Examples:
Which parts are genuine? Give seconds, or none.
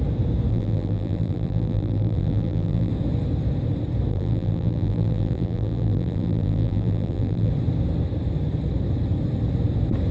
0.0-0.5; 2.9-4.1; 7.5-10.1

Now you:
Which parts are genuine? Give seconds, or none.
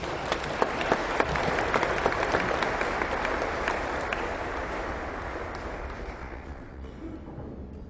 0.0-6.2; 6.9-7.9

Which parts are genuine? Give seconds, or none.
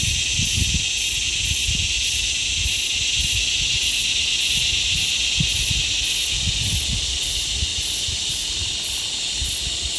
0.0-10.0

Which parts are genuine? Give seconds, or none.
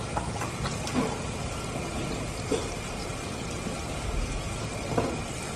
0.0-3.0; 3.8-5.6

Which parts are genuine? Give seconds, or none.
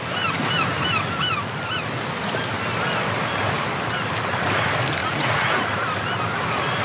0.0-5.0; 5.6-6.8